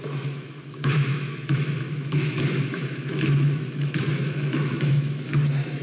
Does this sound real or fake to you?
fake